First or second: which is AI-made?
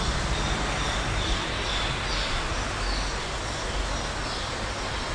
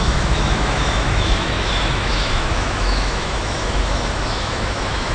second